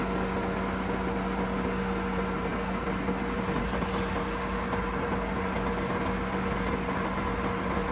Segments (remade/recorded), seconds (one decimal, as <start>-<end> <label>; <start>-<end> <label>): 0.0-7.9 recorded